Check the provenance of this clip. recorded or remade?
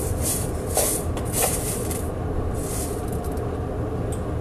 recorded